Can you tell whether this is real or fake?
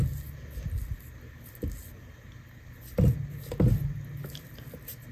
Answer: real